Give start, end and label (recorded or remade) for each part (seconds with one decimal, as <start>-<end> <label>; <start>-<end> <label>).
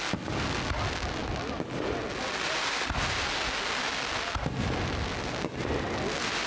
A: 0.0-6.5 recorded